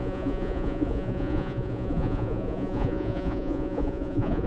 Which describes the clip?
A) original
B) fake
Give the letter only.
B